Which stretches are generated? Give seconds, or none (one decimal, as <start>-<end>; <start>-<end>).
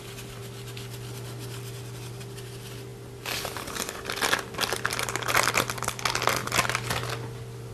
2.9-5.5; 6.4-7.7